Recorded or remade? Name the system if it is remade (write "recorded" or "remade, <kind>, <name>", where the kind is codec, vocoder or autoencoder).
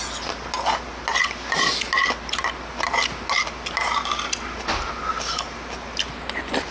recorded